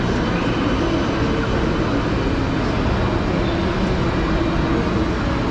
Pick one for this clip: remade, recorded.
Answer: recorded